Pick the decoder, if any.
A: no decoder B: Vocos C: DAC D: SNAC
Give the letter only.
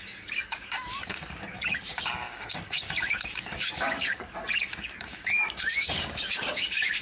C